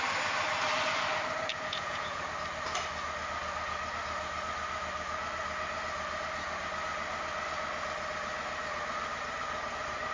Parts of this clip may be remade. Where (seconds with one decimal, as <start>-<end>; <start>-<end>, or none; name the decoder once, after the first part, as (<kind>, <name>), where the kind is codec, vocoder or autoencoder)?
1.5-2.2 (vocoder, Vocos)